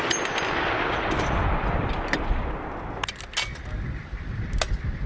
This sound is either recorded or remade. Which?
recorded